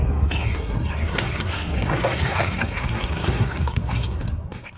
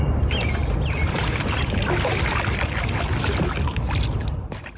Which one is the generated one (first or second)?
first